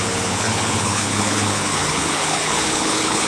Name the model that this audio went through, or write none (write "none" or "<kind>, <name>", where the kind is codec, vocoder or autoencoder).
codec, HILCodec